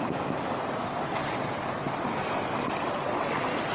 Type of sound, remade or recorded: recorded